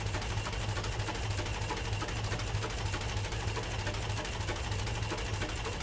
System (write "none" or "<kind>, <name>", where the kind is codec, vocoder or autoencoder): none